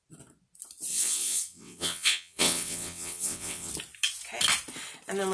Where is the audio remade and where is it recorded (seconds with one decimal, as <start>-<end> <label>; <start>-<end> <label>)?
0.0-0.9 recorded; 0.9-3.7 remade; 3.7-5.3 recorded